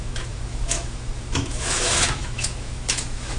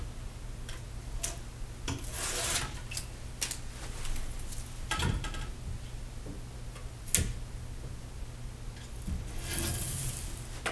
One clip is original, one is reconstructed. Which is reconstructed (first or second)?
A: first